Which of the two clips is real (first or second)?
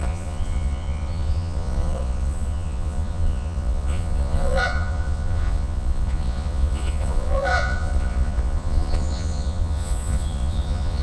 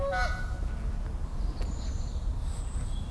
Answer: second